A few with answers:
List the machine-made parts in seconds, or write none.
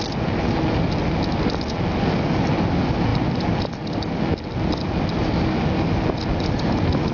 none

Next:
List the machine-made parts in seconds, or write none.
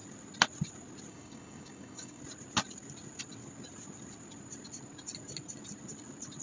1.1-2.2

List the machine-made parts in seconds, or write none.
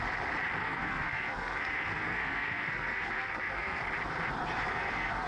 0.6-3.8; 4.7-5.3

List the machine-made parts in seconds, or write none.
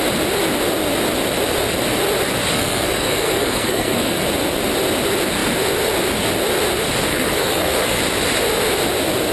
2.5-4.2; 7.1-8.0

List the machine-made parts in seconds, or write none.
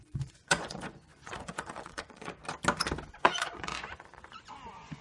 0.0-2.4; 3.1-5.0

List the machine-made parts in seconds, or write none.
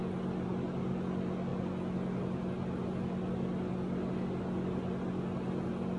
none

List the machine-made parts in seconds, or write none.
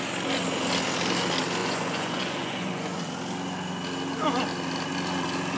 1.6-3.0